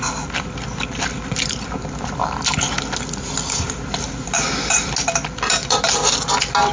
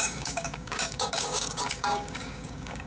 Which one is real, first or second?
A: first